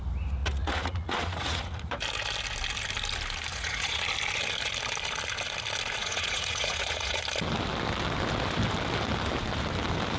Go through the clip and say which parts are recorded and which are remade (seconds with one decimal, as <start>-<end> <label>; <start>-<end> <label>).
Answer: 0.0-0.4 recorded; 0.4-2.0 remade; 2.0-3.5 recorded; 3.5-4.0 remade; 4.0-6.0 recorded; 6.0-7.2 remade; 7.2-10.2 recorded